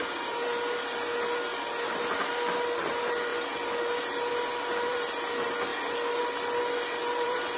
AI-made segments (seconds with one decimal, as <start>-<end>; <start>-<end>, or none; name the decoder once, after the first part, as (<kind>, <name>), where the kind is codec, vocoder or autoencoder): 0.0-5.7 (vocoder, BigVGAN v2); 6.2-7.6